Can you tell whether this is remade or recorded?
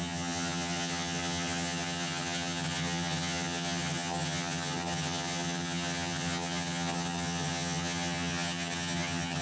remade